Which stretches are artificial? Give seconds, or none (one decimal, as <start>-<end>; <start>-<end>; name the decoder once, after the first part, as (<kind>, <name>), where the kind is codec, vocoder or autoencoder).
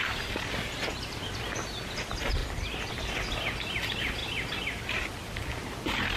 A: 2.4-2.9 (vocoder, BigVGAN v2); 4.2-4.8; 5.6-6.2